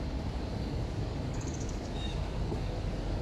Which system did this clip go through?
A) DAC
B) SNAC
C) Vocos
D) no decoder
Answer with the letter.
A